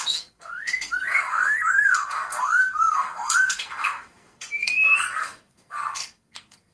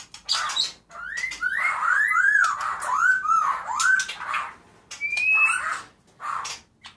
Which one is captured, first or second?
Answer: second